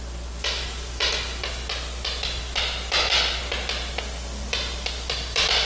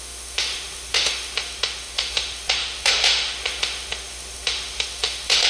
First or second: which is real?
first